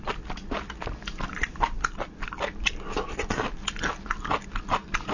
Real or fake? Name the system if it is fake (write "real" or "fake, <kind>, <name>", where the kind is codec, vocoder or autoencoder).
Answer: real